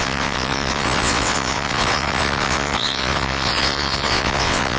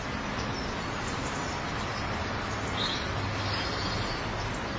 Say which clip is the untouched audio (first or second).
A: second